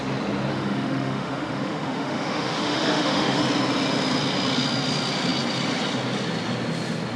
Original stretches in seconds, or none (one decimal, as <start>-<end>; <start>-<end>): 0.0-0.5; 3.4-7.2